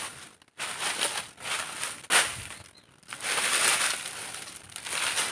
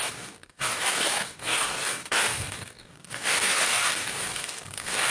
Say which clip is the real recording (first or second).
first